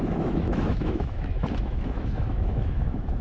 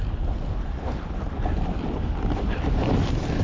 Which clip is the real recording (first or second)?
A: second